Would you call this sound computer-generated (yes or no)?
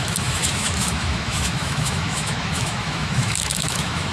yes